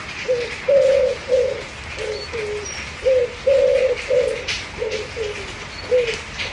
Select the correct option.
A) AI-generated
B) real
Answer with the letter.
B